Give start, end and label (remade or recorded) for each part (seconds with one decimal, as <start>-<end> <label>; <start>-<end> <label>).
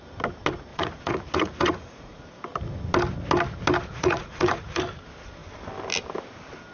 0.0-0.7 recorded; 0.7-2.2 remade; 2.2-3.9 recorded; 3.9-4.8 remade; 4.8-6.7 recorded